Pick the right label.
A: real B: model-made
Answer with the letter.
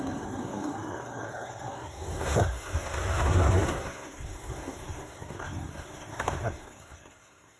B